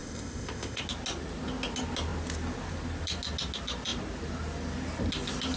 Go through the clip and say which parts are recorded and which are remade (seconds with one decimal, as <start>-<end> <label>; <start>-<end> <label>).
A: 0.0-0.8 remade; 0.8-5.6 recorded